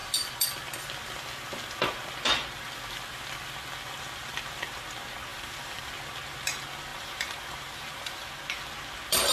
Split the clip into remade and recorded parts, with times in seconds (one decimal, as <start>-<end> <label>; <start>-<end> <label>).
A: 0.0-5.3 recorded; 5.3-5.9 remade; 5.9-6.9 recorded; 6.9-8.3 remade; 8.3-9.3 recorded